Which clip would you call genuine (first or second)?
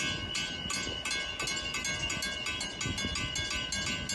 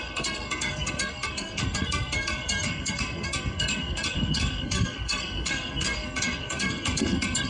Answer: first